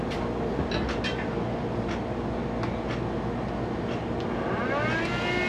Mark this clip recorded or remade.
recorded